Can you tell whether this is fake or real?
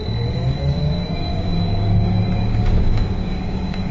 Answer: fake